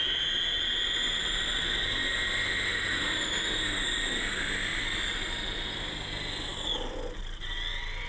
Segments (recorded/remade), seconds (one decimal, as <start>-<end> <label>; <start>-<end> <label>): 0.0-1.2 recorded; 1.2-1.9 remade; 1.9-4.7 recorded; 4.7-5.2 remade; 5.2-8.1 recorded